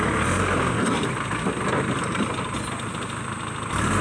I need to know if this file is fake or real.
real